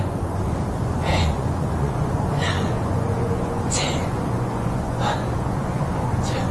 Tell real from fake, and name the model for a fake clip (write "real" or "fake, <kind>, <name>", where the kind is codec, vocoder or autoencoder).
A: fake, vocoder, Vocos